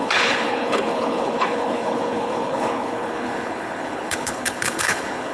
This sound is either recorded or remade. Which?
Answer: remade